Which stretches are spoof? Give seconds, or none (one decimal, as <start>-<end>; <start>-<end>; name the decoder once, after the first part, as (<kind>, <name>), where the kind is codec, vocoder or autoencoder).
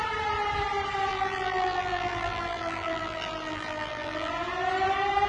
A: 1.1-4.3 (vocoder, BigVGAN v2)